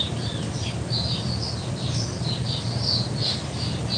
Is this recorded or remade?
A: recorded